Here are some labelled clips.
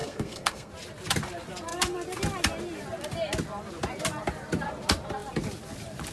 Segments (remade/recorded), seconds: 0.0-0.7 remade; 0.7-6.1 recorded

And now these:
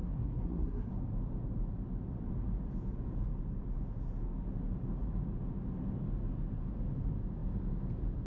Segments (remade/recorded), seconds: 0.0-0.9 remade; 0.9-8.3 recorded

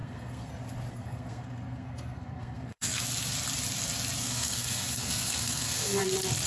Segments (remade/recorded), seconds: 0.0-0.5 remade; 0.5-0.9 recorded; 0.9-3.0 remade; 3.0-4.2 recorded; 4.2-6.0 remade; 6.0-6.5 recorded

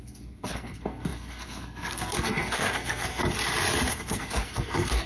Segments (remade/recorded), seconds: 0.0-3.2 remade; 3.2-3.9 recorded; 3.9-5.1 remade

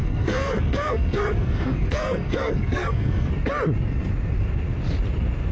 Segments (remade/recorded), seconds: 0.0-3.3 remade; 3.3-5.5 recorded

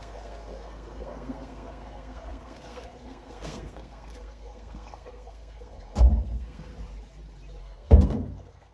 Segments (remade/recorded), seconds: 0.0-6.7 remade; 6.7-7.6 recorded; 7.6-8.7 remade